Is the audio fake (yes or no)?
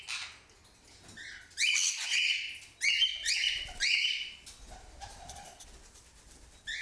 no